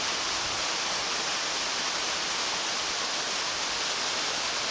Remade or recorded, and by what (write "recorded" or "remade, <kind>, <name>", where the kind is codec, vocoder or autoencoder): recorded